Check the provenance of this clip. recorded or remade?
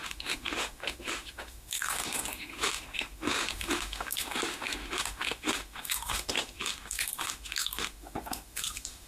remade